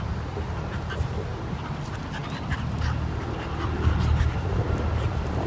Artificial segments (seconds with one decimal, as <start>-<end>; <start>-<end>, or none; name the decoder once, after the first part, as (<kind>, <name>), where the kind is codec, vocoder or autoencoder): 1.3-1.8 (vocoder, BigVGAN v2)